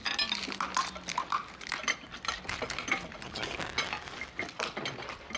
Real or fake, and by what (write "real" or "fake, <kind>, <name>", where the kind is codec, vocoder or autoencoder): real